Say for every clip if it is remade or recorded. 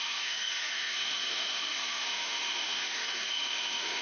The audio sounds remade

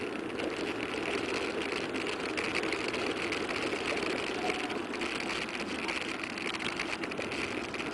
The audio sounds recorded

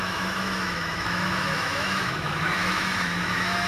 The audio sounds remade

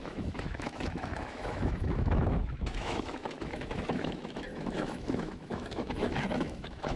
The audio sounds remade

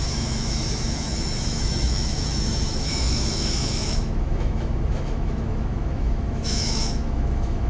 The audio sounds remade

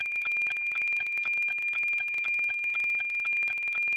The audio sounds remade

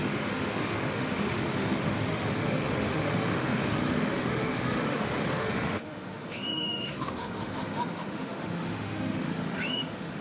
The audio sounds remade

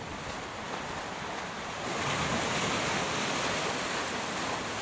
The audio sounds recorded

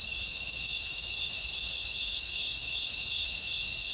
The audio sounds remade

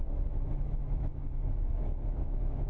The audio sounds remade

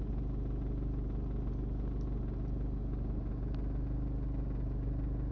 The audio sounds recorded